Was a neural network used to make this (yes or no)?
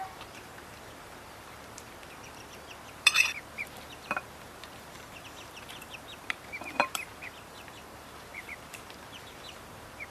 yes